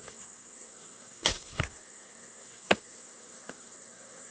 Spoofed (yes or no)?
yes